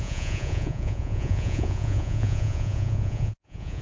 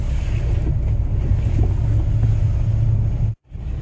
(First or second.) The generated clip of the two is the first